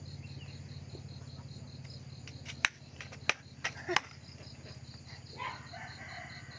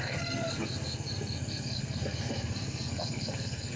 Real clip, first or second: first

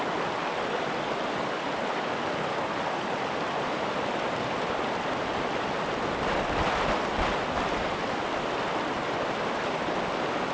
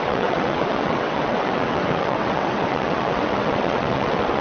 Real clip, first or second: first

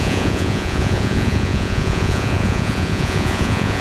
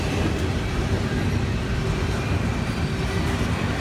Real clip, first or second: second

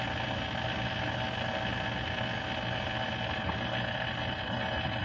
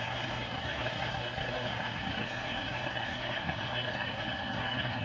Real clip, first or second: first